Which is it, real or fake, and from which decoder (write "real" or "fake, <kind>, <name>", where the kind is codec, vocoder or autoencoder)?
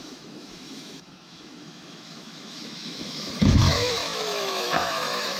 fake, autoencoder, DAC-VAE